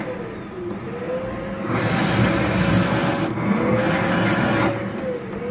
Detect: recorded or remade recorded